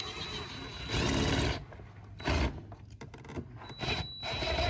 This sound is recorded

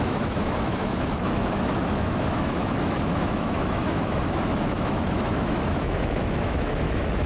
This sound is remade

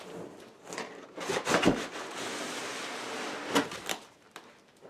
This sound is recorded